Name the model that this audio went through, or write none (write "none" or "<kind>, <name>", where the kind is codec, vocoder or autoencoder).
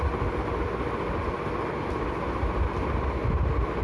none